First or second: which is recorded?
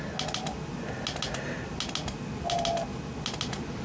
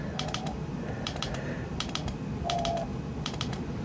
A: first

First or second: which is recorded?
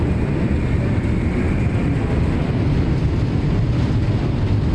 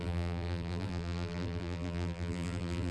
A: first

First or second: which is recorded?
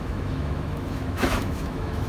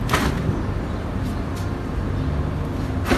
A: second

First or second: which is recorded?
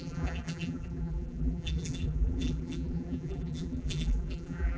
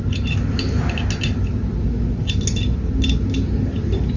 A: second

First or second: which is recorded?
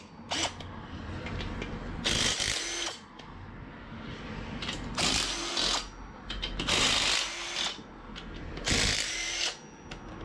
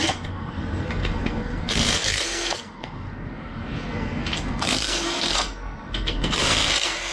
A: first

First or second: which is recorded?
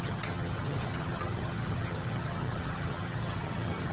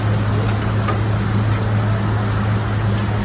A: second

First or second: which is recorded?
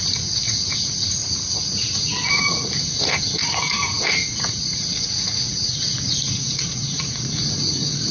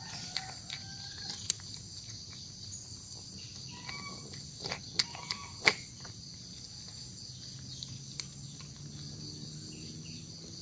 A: second